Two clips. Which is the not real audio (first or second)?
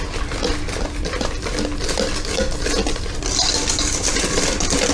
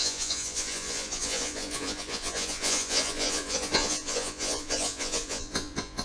second